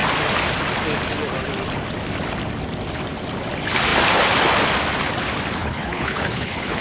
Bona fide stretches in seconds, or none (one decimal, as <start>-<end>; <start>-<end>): 0.0-5.6